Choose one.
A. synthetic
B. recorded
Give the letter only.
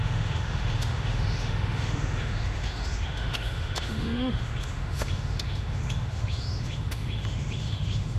A